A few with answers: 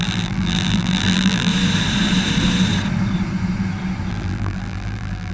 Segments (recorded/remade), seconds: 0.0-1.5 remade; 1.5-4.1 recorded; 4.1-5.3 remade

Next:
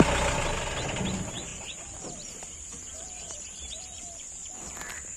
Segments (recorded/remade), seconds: 0.0-1.5 recorded; 1.5-4.0 remade; 4.0-5.2 recorded

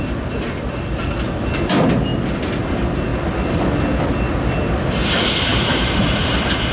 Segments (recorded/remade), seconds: 0.0-5.5 recorded; 5.5-6.0 remade; 6.0-6.7 recorded

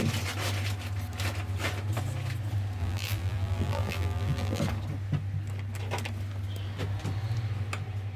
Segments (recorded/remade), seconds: 0.0-2.8 recorded; 2.8-4.6 remade; 4.6-8.2 recorded

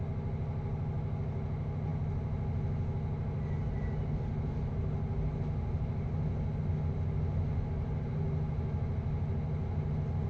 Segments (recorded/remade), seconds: 0.0-10.3 recorded

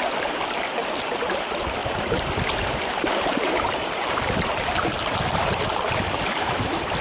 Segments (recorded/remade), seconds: 0.0-1.8 recorded; 1.8-5.2 remade; 5.2-7.0 recorded